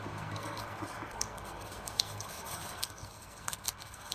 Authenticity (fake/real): fake